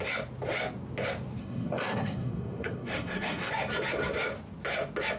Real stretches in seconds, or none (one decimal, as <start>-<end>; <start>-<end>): 0.0-1.4; 3.5-5.2